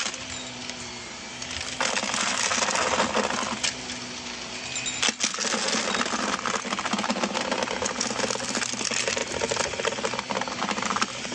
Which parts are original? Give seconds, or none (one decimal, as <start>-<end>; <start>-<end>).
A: 0.0-11.3